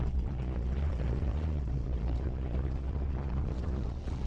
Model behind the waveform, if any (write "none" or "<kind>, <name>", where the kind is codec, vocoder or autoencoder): vocoder, Vocos